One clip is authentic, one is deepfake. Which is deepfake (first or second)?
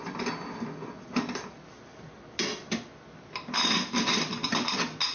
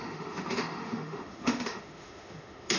second